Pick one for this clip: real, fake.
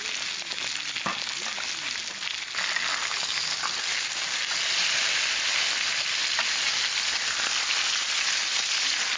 real